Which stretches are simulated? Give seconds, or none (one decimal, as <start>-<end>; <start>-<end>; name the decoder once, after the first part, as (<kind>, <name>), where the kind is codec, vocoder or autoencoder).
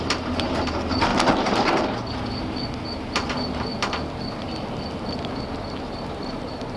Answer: 0.0-1.1 (vocoder, BigVGAN v2); 3.3-3.7; 5.6-6.8